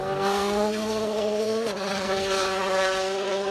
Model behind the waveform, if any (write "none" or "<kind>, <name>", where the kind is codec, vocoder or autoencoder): codec, SNAC